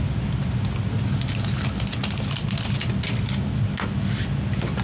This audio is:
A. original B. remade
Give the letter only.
A